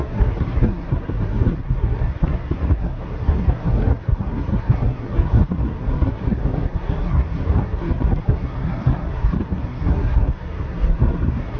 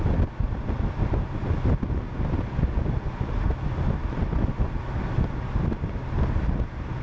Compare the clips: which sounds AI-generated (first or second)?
first